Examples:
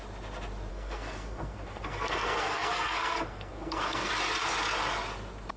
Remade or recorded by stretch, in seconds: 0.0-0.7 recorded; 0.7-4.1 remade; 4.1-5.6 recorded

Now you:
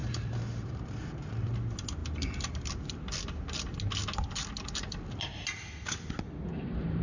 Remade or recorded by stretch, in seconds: 0.0-1.1 remade; 1.1-7.0 recorded

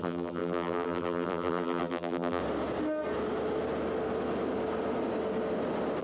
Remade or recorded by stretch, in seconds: 0.0-2.4 remade; 2.4-6.0 recorded

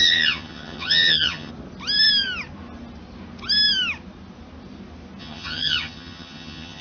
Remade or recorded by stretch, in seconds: 0.0-1.5 remade; 1.5-5.2 recorded; 5.2-6.8 remade

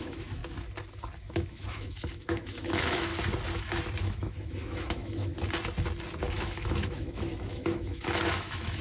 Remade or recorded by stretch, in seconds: 0.0-0.4 remade; 0.4-1.2 recorded; 1.2-3.1 remade; 3.1-4.0 recorded; 4.0-5.3 remade; 5.3-6.3 recorded; 6.3-8.8 remade

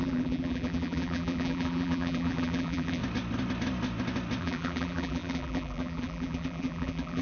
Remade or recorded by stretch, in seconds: 0.0-3.0 remade; 3.0-4.4 recorded; 4.4-7.2 remade

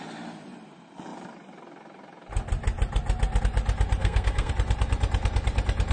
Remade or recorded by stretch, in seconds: 0.0-4.0 recorded; 4.0-4.5 remade; 4.5-5.9 recorded

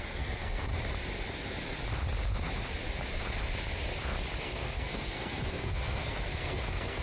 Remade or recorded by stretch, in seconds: 0.0-0.7 remade; 0.7-4.4 recorded; 4.4-7.0 remade